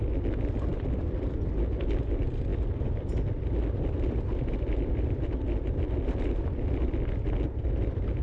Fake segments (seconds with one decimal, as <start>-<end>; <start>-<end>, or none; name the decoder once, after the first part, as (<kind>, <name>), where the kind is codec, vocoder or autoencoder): none